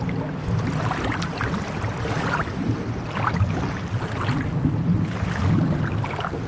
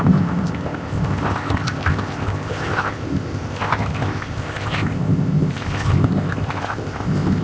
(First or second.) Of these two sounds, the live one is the first